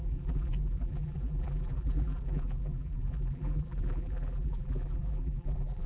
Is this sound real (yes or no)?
no